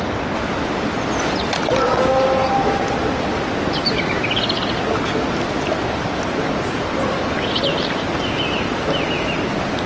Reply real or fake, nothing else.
real